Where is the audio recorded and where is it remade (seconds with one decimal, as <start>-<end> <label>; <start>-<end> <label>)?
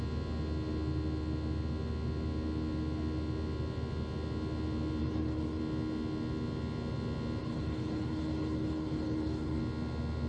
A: 0.0-5.0 recorded; 5.0-5.6 remade; 5.6-7.4 recorded; 7.4-9.6 remade; 9.6-10.3 recorded